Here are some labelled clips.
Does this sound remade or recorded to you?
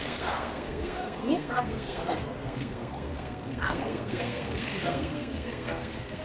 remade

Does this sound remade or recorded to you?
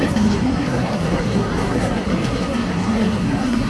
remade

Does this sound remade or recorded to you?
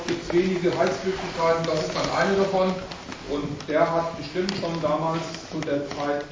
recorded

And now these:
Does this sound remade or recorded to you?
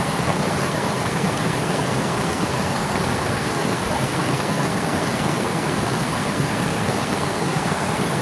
remade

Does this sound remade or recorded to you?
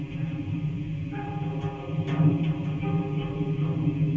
recorded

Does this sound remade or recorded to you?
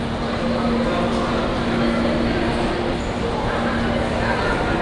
recorded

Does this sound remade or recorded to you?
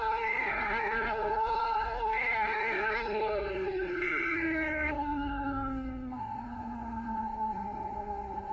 remade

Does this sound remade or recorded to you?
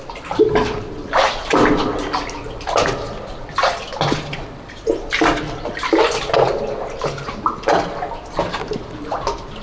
recorded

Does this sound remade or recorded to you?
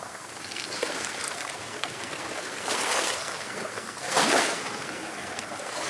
remade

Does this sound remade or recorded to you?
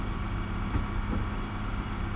recorded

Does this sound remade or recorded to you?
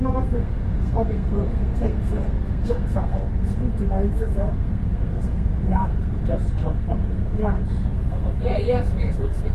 remade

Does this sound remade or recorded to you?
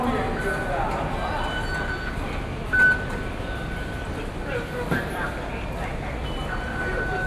recorded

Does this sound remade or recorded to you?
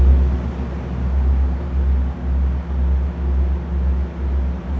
recorded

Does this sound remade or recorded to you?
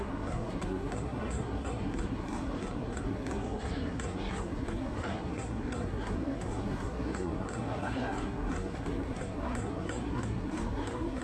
remade